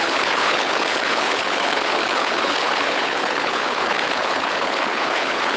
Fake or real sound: fake